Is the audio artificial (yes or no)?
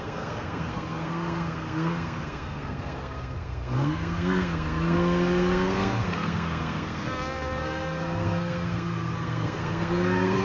yes